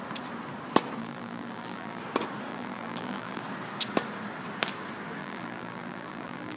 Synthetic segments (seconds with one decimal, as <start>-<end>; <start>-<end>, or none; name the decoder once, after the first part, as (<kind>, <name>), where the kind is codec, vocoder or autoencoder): 1.0-2.0 (vocoder, BigVGAN v2); 2.5-3.4; 5.2-6.6